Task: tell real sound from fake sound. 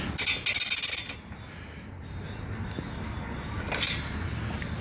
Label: real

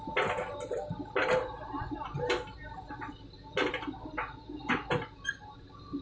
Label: real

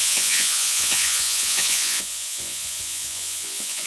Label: fake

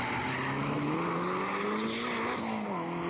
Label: real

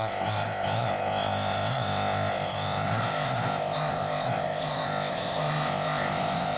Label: fake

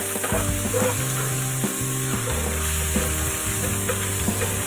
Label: real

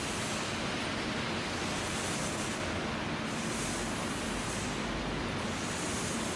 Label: real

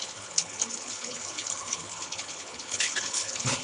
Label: fake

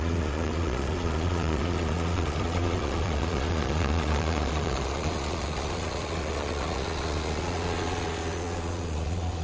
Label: fake